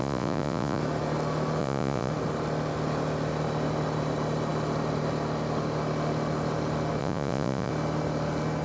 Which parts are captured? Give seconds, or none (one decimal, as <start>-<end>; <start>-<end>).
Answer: 0.8-1.6; 2.1-7.0; 7.7-8.6